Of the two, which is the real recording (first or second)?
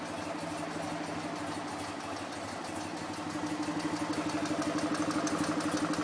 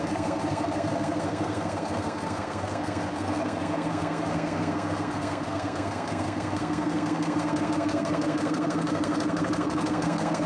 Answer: first